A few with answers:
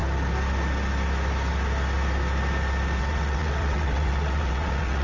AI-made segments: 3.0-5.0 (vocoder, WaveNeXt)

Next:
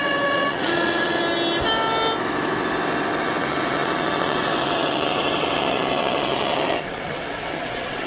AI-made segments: 0.0-1.2 (vocoder, WaveNeXt); 3.2-8.1

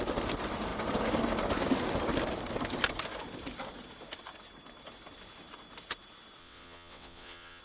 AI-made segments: 6.4-7.6 (vocoder, WaveNeXt)

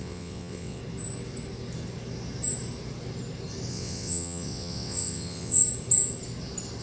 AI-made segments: 0.0-0.8 (vocoder, WaveNeXt); 3.7-5.6

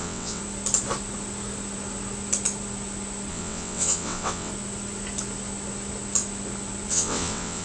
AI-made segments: 0.0-0.4 (vocoder, WaveNeXt); 3.3-4.5; 6.9-7.6

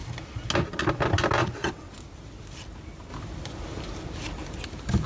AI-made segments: 1.4-1.9 (vocoder, WaveNeXt)

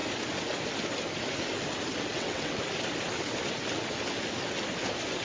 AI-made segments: 2.0-2.6 (vocoder, WaveNeXt)